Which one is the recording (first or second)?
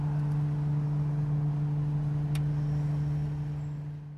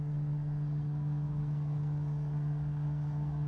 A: first